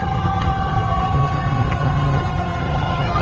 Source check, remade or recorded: remade